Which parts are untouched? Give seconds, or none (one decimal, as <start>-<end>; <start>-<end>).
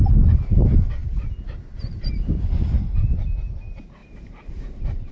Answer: 0.0-4.0